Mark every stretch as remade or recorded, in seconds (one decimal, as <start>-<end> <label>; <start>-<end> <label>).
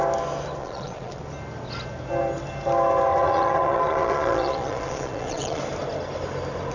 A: 0.0-0.6 recorded; 0.6-1.2 remade; 1.2-3.1 recorded; 3.1-5.6 remade; 5.6-6.7 recorded